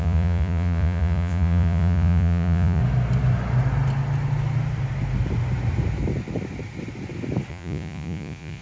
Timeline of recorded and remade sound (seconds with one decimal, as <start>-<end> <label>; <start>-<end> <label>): 0.0-2.8 remade; 2.8-7.5 recorded; 7.5-8.6 remade